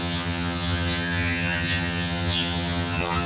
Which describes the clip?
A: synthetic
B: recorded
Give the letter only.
A